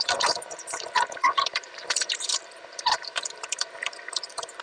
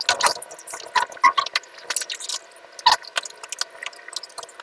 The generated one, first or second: first